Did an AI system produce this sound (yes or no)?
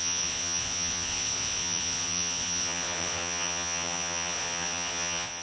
yes